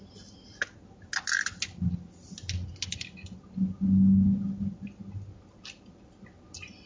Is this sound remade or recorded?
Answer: recorded